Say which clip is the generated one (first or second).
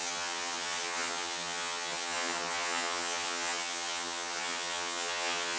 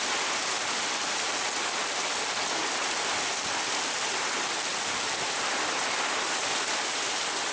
first